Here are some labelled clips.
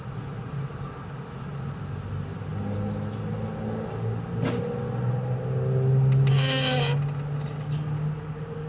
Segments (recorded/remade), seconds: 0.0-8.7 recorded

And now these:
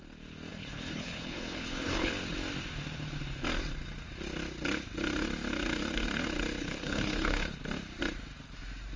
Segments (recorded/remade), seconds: 0.0-0.5 recorded; 0.5-2.1 remade; 2.1-6.6 recorded; 6.6-7.5 remade; 7.5-9.0 recorded

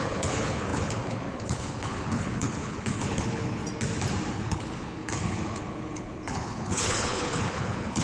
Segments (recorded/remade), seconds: 0.0-3.6 remade; 3.6-4.3 recorded; 4.3-8.0 remade

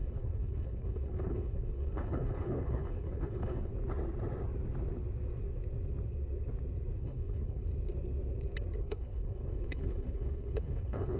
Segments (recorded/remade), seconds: 0.0-3.7 remade; 3.7-7.0 recorded; 7.0-7.7 remade; 7.7-8.8 recorded; 8.8-11.2 remade

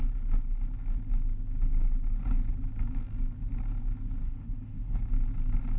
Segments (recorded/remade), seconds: 0.0-4.2 recorded; 4.2-5.0 remade; 5.0-5.8 recorded

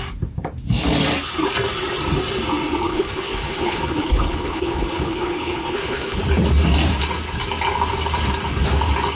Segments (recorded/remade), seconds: 0.0-2.8 recorded; 2.8-6.2 remade; 6.2-9.2 recorded

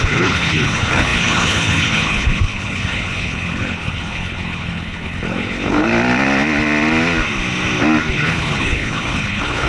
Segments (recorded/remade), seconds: 0.0-5.9 remade; 5.9-8.1 recorded; 8.1-9.7 remade